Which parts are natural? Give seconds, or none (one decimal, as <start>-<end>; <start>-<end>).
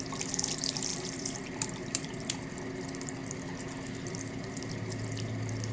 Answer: 0.0-0.9; 2.4-5.7